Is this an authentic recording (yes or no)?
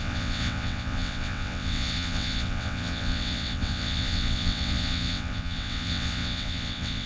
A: no